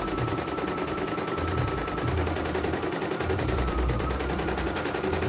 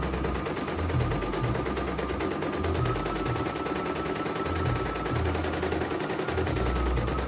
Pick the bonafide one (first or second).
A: second